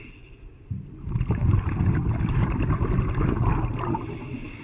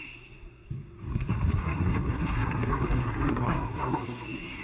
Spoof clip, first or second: second